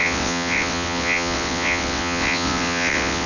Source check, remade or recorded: remade